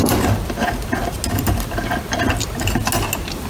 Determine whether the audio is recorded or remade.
recorded